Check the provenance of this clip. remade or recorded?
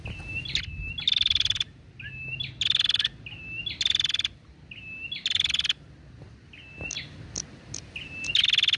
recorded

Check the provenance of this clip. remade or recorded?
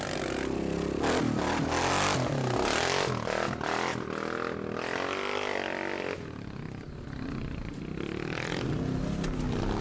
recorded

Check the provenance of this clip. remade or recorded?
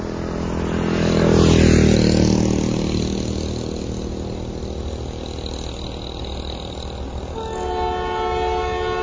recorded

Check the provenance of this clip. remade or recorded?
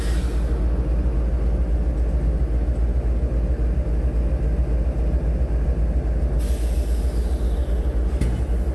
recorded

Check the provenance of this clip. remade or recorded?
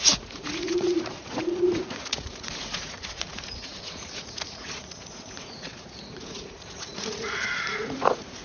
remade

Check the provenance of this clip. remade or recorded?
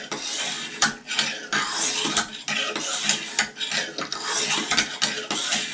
recorded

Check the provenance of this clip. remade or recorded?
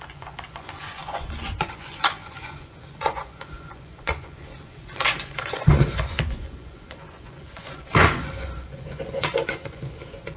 remade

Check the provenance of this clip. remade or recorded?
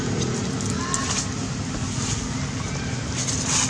recorded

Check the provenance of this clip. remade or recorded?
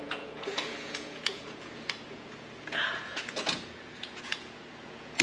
remade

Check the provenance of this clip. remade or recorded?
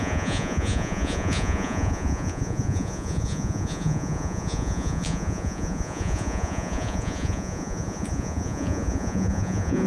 remade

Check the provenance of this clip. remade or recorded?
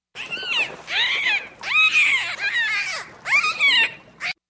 recorded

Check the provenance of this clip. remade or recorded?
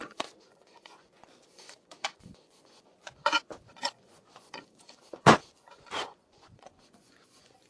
remade